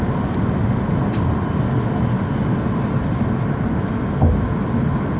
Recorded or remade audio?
recorded